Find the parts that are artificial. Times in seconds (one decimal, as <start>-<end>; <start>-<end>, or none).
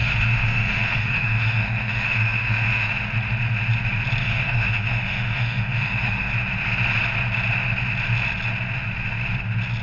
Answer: 0.0-2.9; 4.2-6.3